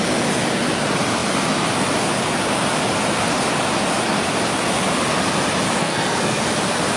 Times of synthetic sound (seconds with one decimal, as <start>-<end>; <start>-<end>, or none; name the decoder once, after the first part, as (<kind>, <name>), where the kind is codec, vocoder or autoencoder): 5.8-6.4 (codec, SNAC)